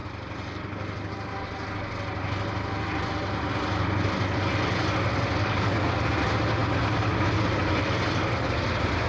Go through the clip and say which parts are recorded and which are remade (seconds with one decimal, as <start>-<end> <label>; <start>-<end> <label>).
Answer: 0.0-5.4 recorded; 5.4-5.9 remade; 5.9-9.1 recorded